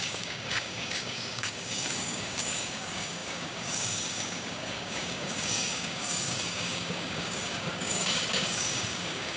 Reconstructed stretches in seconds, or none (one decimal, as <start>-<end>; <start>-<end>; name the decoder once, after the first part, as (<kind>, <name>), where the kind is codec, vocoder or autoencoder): 0.0-9.4 (codec, DAC)